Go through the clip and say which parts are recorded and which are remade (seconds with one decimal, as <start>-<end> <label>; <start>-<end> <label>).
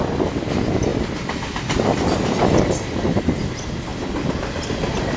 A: 0.0-0.9 recorded; 0.9-3.3 remade; 3.3-3.9 recorded; 3.9-5.2 remade